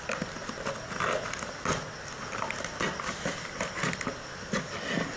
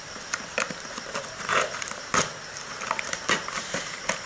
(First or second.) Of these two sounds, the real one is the first